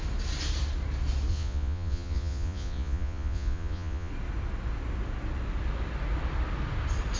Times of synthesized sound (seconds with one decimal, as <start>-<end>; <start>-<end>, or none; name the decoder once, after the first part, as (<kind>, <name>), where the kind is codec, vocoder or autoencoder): 1.3-4.1 (vocoder, Vocos)